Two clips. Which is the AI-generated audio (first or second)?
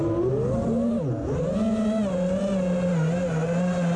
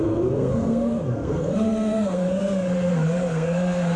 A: second